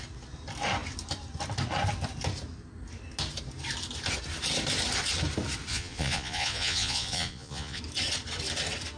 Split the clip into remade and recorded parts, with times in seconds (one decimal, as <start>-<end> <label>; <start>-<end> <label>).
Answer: 0.0-5.7 recorded; 5.7-7.8 remade; 7.8-9.0 recorded